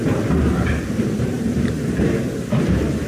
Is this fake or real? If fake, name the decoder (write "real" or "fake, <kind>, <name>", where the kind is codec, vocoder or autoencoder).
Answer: fake, vocoder, BigVGAN v2